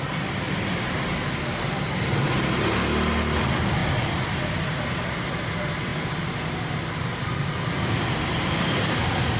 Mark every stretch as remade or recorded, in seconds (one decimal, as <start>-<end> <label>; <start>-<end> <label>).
0.0-9.4 recorded